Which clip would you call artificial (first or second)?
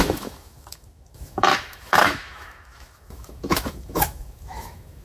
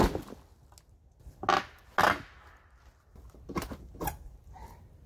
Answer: first